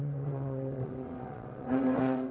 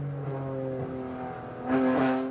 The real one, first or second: second